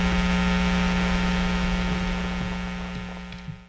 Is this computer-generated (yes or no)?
no